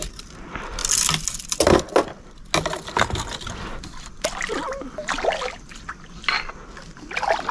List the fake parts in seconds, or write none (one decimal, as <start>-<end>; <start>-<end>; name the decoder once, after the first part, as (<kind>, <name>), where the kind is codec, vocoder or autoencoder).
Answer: none